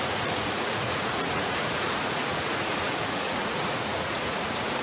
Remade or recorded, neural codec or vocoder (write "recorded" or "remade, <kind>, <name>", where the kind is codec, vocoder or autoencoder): remade, vocoder, Vocos